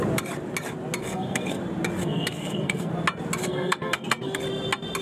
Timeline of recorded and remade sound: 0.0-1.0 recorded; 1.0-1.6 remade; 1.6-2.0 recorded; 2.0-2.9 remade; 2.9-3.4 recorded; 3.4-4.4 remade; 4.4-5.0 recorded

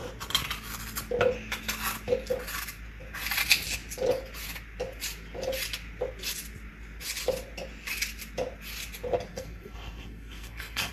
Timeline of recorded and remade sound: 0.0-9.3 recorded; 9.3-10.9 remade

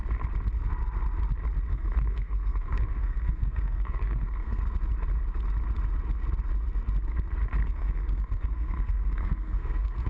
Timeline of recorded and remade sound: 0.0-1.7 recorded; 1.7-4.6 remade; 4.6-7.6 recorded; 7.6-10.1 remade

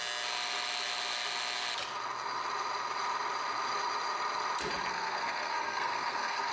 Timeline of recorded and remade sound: 0.0-4.9 recorded; 4.9-6.5 remade

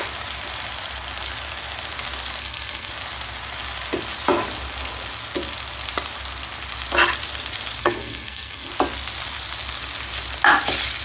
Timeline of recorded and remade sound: 0.0-2.4 recorded; 2.4-2.9 remade; 2.9-7.8 recorded; 7.8-8.7 remade; 8.7-11.0 recorded

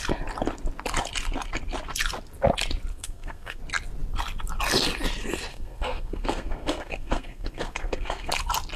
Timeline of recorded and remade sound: 0.0-2.9 recorded; 2.9-3.6 remade; 3.6-5.5 recorded; 5.5-8.3 remade; 8.3-8.8 recorded

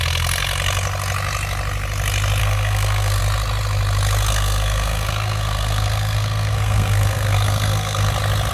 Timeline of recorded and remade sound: 0.0-2.4 recorded; 2.4-3.2 remade; 3.2-4.3 recorded; 4.3-8.1 remade; 8.1-8.5 recorded